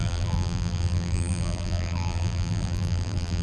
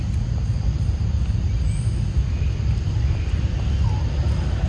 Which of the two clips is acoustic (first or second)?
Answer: second